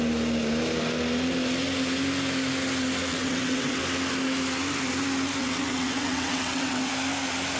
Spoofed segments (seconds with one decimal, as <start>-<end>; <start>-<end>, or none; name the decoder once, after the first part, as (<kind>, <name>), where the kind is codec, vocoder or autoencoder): 3.1-3.8 (vocoder, WaveNeXt); 5.4-6.9